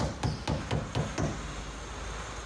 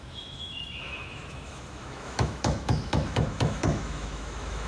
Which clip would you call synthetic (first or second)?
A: second